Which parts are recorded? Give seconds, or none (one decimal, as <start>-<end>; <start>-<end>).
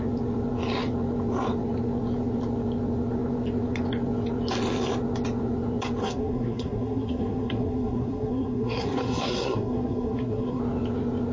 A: 0.0-6.0; 10.6-11.3